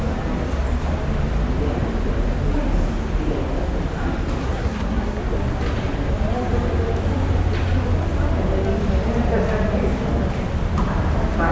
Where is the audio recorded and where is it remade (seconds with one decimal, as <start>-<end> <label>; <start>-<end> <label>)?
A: 0.0-4.4 recorded; 4.4-5.2 remade; 5.2-11.5 recorded